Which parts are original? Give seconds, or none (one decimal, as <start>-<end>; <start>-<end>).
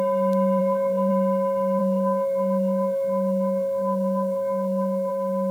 0.0-0.6; 1.1-1.8; 5.1-5.5